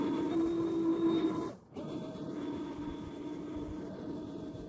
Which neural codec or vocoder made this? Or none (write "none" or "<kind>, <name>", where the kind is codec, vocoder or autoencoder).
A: vocoder, BigVGAN v2